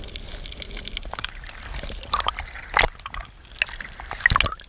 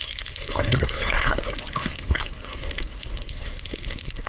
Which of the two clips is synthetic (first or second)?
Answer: second